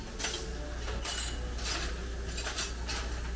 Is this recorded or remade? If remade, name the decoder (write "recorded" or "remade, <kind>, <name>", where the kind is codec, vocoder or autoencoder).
recorded